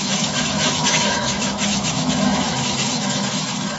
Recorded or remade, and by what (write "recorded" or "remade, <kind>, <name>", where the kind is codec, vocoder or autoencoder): remade, autoencoder, DAC-VAE